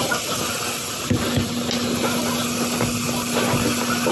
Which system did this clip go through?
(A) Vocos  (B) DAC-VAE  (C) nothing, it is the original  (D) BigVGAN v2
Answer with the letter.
C